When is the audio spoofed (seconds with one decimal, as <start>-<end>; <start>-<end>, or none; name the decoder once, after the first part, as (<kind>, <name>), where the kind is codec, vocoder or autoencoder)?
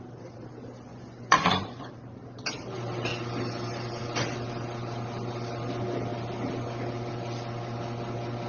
0.9-1.9 (vocoder, Vocos)